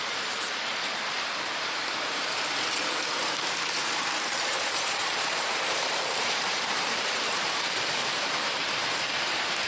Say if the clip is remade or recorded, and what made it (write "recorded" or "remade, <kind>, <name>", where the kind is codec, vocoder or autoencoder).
remade, vocoder, BigVGAN v2